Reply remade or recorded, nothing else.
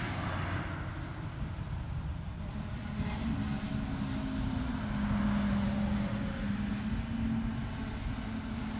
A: recorded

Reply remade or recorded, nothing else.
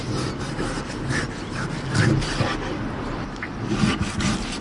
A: recorded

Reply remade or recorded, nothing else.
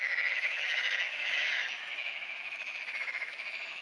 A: remade